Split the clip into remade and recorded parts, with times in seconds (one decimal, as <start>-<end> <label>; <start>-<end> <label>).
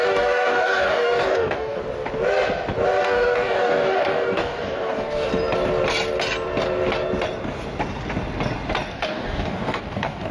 0.0-1.8 remade; 1.8-3.0 recorded; 3.0-5.3 remade; 5.3-8.9 recorded; 8.9-10.3 remade